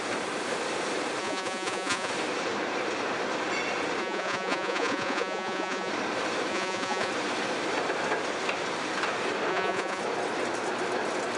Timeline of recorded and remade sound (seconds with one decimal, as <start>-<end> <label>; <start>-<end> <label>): 0.0-1.2 recorded; 1.2-2.1 remade; 2.1-4.0 recorded; 4.0-5.9 remade; 5.9-6.5 recorded; 6.5-7.1 remade; 7.1-9.5 recorded; 9.5-10.0 remade; 10.0-11.4 recorded